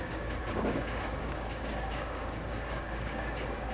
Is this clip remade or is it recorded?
remade